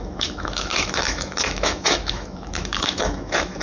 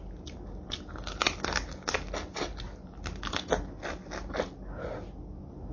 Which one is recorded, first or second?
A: second